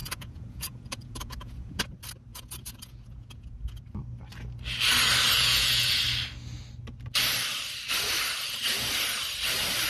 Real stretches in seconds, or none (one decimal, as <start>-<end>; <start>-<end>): 1.8-2.3; 3.8-5.4; 6.0-9.9